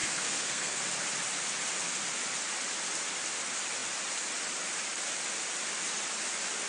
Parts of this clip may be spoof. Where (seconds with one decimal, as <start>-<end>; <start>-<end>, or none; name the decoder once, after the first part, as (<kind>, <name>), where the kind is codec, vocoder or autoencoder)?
0.0-0.8 (codec, SNAC)